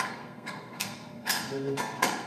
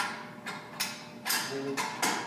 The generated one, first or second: first